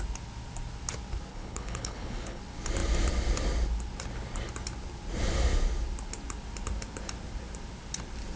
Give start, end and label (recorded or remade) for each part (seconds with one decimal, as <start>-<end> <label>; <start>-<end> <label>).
0.0-1.3 recorded; 1.3-2.4 remade; 2.4-8.4 recorded